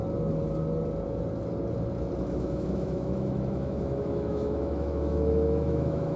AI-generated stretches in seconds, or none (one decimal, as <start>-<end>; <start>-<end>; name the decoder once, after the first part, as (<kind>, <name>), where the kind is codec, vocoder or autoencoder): 2.2-6.2 (autoencoder, DAC-VAE)